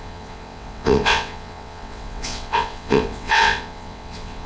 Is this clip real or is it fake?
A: fake